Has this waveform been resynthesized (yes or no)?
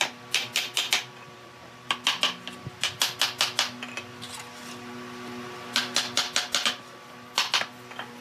no